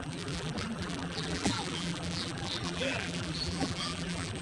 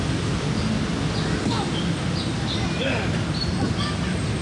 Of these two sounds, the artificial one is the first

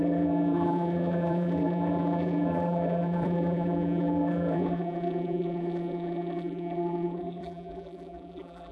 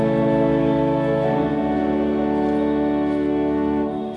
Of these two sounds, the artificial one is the first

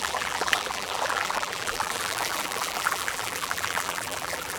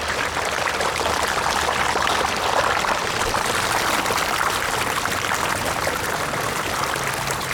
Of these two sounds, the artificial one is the first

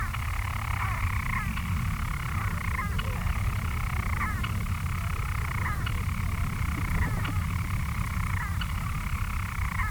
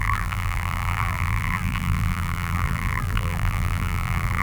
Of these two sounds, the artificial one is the second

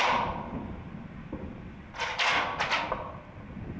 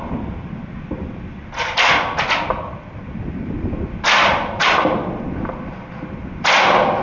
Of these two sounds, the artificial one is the second